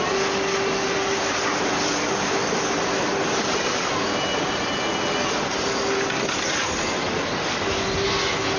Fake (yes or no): no